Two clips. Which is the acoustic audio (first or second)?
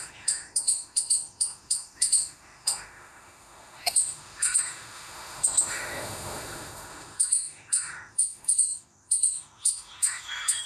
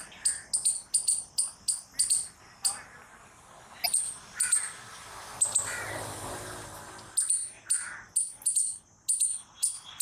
second